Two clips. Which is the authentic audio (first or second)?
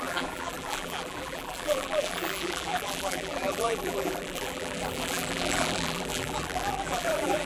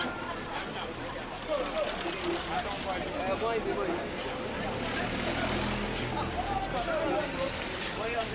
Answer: second